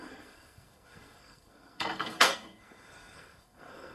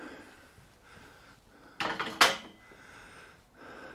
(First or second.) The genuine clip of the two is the second